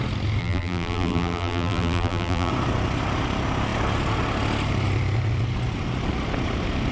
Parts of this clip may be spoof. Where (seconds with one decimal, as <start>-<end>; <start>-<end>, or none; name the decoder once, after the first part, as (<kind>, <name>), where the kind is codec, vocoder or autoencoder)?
0.4-2.5 (vocoder, BigVGAN v2)